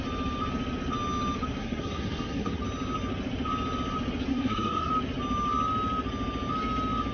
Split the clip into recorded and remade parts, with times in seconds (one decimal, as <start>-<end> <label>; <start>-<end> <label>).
0.0-1.6 recorded; 1.6-2.6 remade; 2.6-4.3 recorded; 4.3-4.9 remade; 4.9-7.1 recorded